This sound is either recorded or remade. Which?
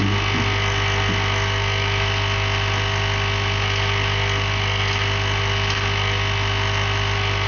recorded